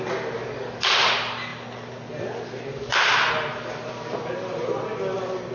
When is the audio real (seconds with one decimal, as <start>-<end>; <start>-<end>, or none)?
0.0-5.5